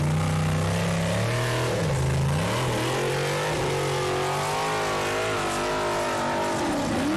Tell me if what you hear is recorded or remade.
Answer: recorded